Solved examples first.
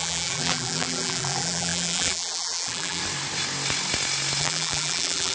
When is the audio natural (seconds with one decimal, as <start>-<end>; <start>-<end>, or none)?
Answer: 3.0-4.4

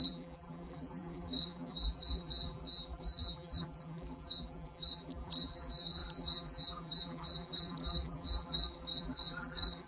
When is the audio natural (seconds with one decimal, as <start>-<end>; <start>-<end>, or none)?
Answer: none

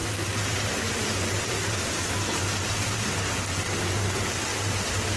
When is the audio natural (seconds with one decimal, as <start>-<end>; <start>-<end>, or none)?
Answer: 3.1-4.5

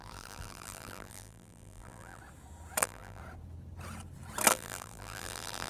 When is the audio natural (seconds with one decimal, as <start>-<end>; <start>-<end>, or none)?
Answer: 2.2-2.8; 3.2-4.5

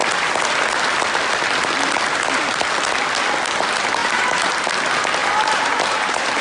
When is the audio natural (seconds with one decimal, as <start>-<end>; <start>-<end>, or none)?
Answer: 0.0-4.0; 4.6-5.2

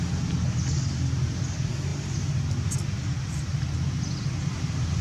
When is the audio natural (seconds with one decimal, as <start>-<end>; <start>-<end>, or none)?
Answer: 0.0-5.0

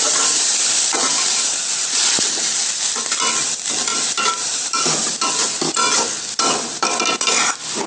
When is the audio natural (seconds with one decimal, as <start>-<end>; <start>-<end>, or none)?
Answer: 0.0-3.9; 4.8-7.9